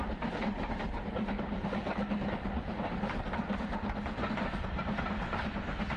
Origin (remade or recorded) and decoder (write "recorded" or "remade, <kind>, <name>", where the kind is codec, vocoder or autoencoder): recorded